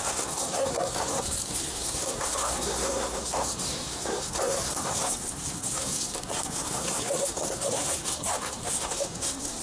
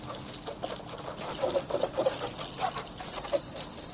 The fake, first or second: first